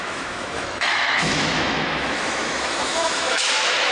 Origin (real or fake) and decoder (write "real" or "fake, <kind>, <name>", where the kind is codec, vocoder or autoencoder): fake, autoencoder, DAC-VAE